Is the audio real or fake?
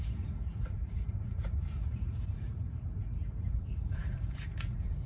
fake